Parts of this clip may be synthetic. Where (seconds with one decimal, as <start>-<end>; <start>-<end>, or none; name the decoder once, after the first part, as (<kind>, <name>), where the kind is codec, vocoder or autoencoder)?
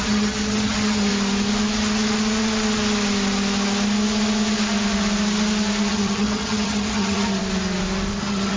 0.0-1.1 (vocoder, HiFi-GAN); 5.9-7.4; 8.2-8.6